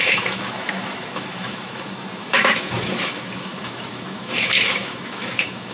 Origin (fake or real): fake